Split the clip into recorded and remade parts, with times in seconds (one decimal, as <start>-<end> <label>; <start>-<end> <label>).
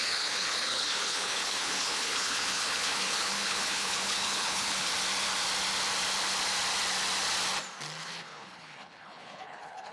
0.0-4.9 remade; 4.9-8.0 recorded; 8.0-9.9 remade